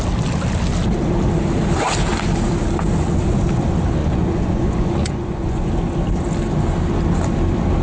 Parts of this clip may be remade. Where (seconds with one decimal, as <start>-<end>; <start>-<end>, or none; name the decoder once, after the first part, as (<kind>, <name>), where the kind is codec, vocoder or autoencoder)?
4.0-5.7 (vocoder, Vocos)